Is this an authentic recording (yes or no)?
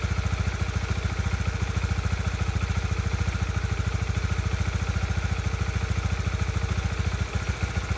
yes